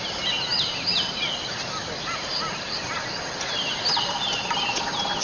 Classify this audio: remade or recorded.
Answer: recorded